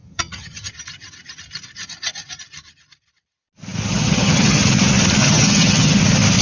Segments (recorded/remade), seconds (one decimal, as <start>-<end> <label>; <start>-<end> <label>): 0.0-0.7 remade; 0.7-3.9 recorded; 3.9-4.6 remade; 4.6-5.2 recorded; 5.2-6.0 remade; 6.0-6.4 recorded